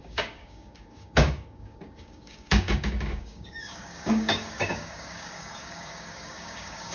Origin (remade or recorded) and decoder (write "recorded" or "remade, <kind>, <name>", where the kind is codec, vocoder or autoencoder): remade, codec, DAC